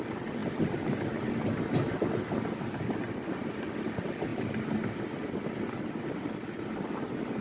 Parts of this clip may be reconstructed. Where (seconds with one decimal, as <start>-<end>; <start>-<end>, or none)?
none